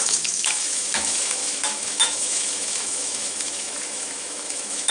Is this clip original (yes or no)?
no